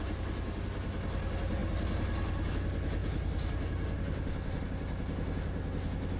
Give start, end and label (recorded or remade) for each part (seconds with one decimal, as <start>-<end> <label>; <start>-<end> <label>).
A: 0.0-6.2 recorded